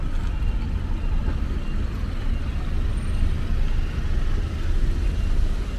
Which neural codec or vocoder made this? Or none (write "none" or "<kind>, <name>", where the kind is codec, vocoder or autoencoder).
none